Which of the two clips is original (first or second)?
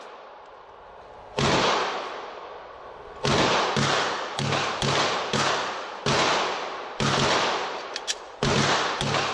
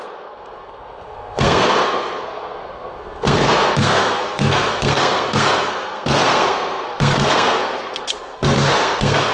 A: first